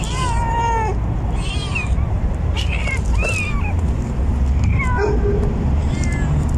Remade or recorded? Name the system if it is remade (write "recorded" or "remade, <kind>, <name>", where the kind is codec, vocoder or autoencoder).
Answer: recorded